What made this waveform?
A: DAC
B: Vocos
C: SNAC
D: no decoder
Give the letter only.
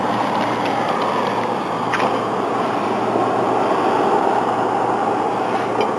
D